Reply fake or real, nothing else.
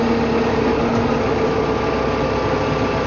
real